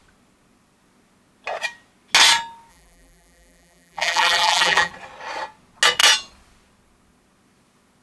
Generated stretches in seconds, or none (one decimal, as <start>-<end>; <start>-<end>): 2.7-4.9